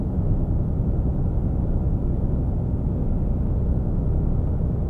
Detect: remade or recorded recorded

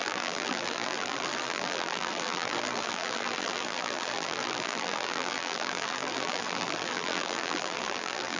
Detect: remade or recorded remade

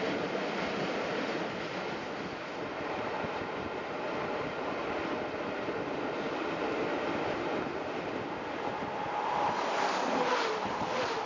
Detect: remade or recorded recorded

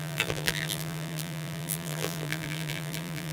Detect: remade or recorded remade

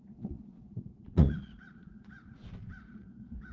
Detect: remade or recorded remade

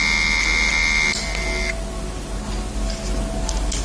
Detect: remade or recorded recorded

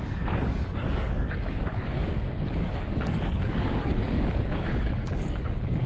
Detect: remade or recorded remade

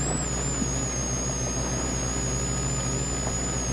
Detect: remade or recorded recorded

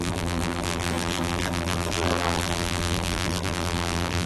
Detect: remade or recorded remade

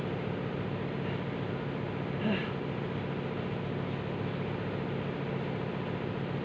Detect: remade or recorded recorded